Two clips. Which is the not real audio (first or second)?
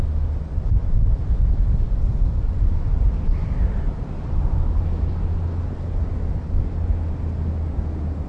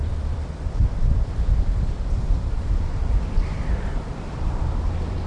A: second